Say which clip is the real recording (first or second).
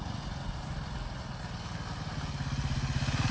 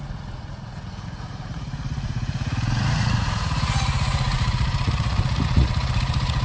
first